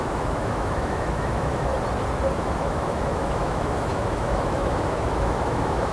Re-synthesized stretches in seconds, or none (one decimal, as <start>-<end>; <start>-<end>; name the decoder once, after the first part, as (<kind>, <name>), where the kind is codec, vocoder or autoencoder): 0.0-1.7 (autoencoder, DAC-VAE); 2.4-5.9

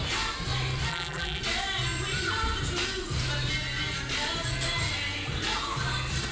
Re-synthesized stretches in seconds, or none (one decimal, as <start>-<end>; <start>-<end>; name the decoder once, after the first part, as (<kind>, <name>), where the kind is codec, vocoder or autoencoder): 0.9-1.4 (vocoder, BigVGAN v2)

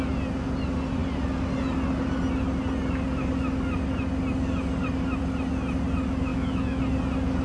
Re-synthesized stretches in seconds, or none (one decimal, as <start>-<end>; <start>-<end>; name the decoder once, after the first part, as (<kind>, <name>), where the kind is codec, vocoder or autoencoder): 6.3-6.8 (autoencoder, DAC-VAE)

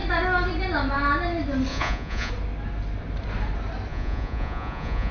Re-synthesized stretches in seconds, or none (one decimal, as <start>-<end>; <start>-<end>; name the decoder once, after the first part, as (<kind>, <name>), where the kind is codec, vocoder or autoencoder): 1.7-2.3 (vocoder, Vocos); 3.9-5.1